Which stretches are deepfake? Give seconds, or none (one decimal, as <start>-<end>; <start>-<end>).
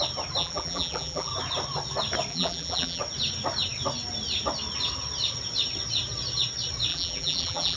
0.4-1.3; 2.3-3.0; 6.9-7.8